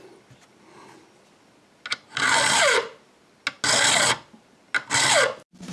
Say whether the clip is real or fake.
real